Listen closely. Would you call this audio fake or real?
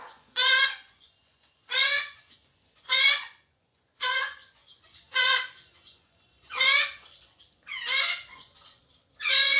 fake